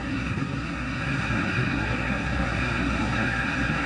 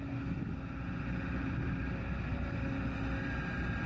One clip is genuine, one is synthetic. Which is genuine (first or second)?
second